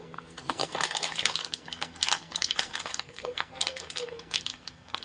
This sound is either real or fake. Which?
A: fake